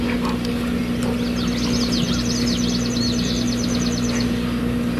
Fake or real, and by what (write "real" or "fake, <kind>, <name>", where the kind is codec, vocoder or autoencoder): real